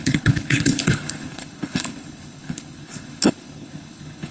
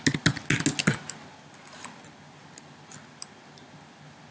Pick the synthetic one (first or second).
first